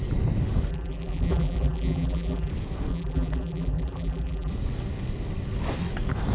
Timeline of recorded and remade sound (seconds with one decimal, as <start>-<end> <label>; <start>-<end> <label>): 0.0-0.7 recorded; 0.7-2.5 remade; 2.5-2.9 recorded; 2.9-4.5 remade; 4.5-6.3 recorded